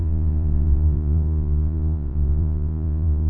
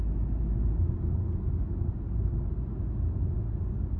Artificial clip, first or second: first